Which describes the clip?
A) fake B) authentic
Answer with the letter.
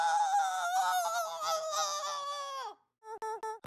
B